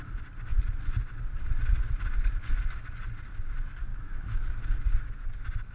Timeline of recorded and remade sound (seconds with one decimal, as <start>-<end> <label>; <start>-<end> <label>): 0.0-3.9 recorded; 3.9-4.6 remade; 4.6-5.7 recorded